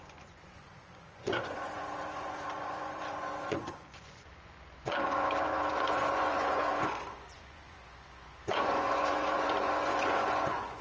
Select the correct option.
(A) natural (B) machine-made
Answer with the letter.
B